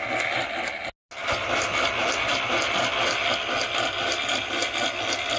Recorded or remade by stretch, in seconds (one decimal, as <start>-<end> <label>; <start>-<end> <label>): 0.0-5.4 recorded